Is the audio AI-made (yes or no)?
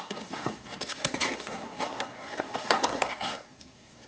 yes